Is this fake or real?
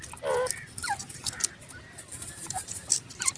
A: real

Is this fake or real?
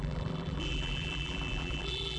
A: fake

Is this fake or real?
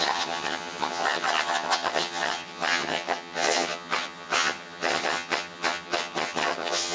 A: fake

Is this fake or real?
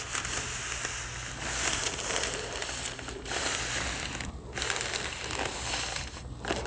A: real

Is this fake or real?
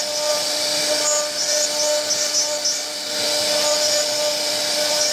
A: real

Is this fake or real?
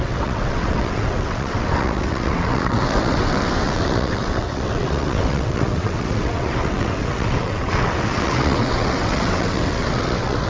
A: fake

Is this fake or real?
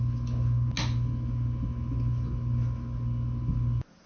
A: real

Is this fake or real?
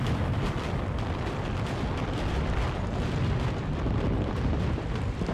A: fake